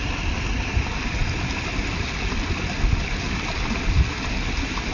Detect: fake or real real